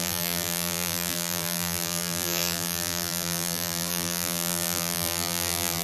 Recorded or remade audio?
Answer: remade